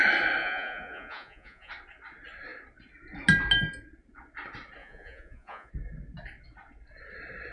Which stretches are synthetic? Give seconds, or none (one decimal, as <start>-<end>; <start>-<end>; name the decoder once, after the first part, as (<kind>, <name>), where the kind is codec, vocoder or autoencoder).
0.4-1.7 (vocoder, Vocos); 4.8-5.7